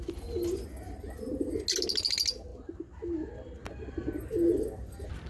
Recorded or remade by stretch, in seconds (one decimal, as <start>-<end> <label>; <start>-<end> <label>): 0.0-5.3 recorded